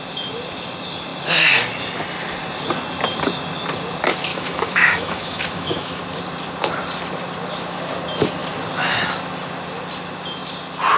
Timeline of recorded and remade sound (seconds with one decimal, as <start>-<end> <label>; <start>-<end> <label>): 0.0-4.3 recorded; 4.3-6.0 remade; 6.0-11.0 recorded